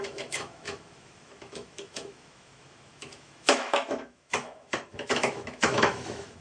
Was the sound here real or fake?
fake